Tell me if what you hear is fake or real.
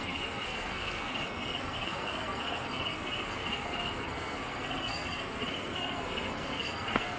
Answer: fake